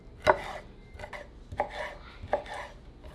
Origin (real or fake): real